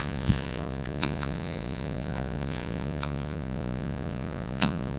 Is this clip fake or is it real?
fake